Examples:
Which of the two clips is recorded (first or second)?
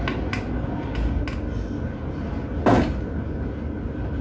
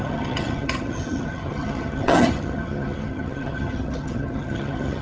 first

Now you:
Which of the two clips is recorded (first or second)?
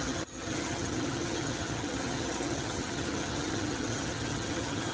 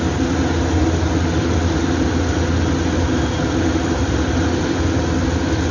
second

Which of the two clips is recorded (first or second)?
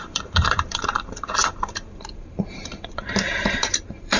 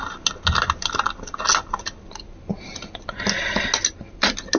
second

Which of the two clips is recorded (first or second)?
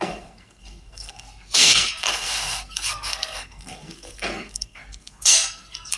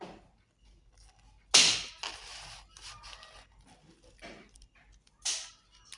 second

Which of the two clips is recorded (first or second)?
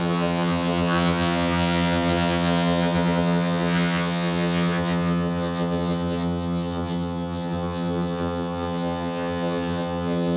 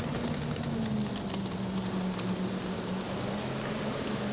second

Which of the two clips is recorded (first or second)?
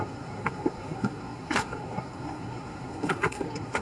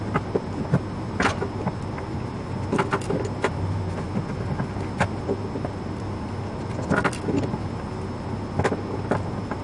second